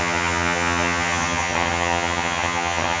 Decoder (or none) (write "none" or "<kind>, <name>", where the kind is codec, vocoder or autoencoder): vocoder, HiFi-GAN